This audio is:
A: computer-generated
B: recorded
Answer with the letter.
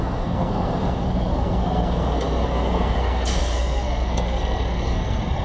A